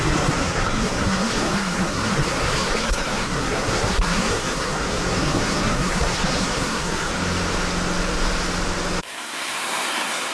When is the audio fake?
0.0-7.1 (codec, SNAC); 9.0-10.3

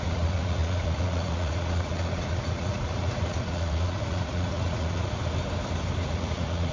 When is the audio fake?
0.0-5.2 (vocoder, Vocos); 6.0-6.7

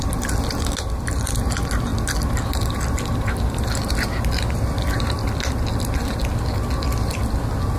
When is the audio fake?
none

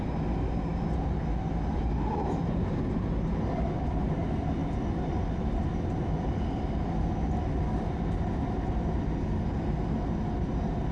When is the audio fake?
none

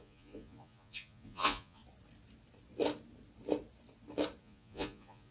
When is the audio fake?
0.0-1.8 (vocoder, Vocos); 4.4-5.3

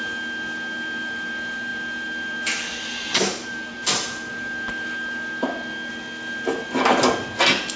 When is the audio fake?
none

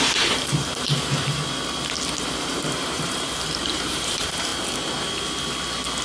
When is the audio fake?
0.0-1.4 (vocoder, BigVGAN v2); 2.2-4.5